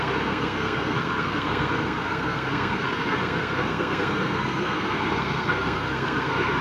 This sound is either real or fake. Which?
fake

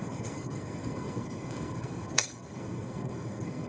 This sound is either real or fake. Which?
fake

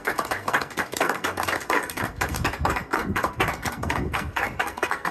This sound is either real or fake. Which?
fake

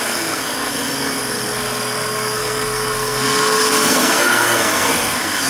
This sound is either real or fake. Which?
fake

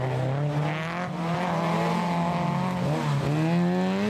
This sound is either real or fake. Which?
real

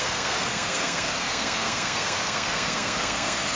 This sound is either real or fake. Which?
fake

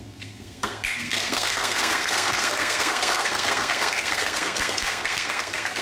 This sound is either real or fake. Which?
fake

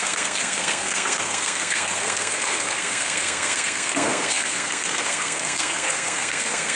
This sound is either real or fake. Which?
fake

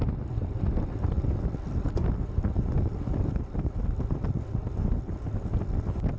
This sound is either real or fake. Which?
real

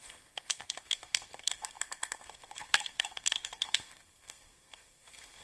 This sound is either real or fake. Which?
fake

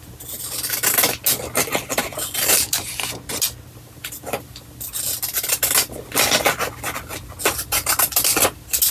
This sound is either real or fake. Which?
real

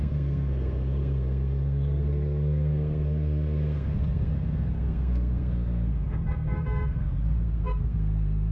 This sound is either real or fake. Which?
fake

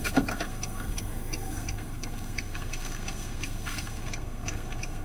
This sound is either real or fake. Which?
fake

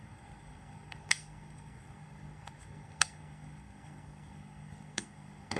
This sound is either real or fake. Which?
fake